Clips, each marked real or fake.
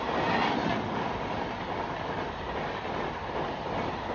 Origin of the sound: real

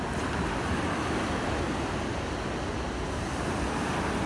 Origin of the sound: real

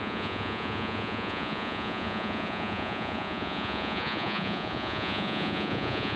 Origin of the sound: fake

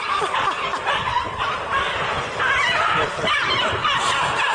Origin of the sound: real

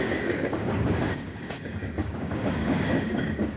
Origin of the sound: fake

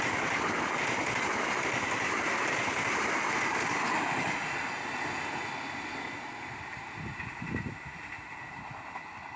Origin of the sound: real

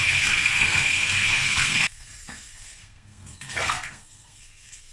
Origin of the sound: fake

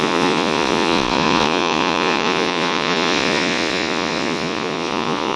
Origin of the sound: fake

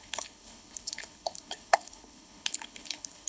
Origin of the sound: fake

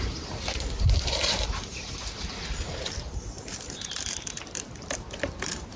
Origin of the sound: fake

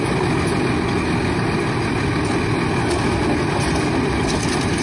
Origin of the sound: real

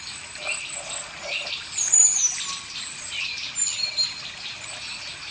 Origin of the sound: real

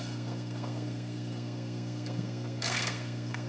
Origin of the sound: fake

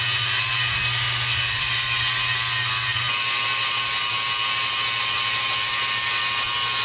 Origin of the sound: real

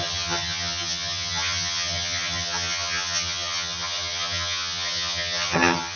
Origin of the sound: fake